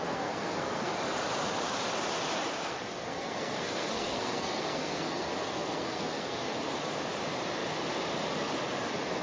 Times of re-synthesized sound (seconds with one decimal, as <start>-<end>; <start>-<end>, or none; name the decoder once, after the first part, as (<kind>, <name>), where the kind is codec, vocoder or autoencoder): 0.0-0.9 (codec, SNAC); 2.6-6.5